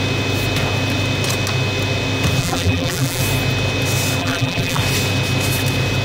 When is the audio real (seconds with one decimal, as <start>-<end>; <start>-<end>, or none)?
0.0-2.4; 3.2-4.2; 4.8-6.0